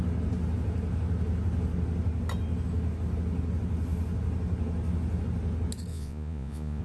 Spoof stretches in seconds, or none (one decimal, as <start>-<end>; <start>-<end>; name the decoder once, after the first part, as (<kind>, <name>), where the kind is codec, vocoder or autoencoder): 5.9-6.8 (vocoder, Vocos)